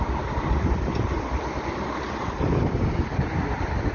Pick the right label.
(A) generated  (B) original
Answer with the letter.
B